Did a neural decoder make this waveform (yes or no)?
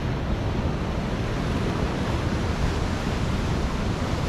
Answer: no